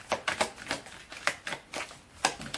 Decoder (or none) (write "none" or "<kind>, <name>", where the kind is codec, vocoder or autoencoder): none